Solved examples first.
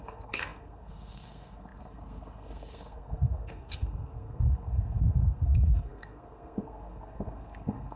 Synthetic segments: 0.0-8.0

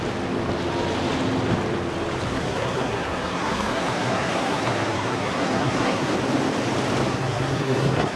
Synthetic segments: 2.3-6.1; 7.1-8.2

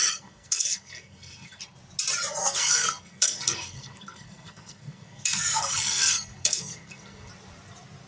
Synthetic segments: 0.0-1.6; 2.4-7.3

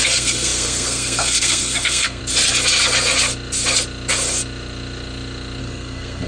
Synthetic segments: 0.0-2.2; 5.6-6.3